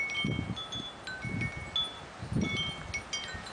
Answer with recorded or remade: recorded